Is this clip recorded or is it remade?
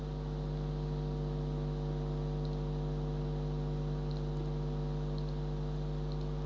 recorded